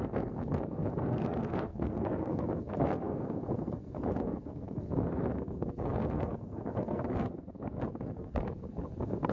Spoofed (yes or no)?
yes